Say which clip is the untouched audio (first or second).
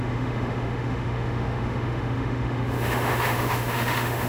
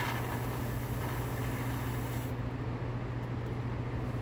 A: second